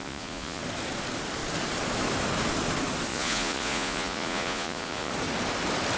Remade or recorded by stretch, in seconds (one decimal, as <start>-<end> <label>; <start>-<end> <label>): 0.0-0.6 remade; 0.6-3.1 recorded; 3.1-5.1 remade; 5.1-6.0 recorded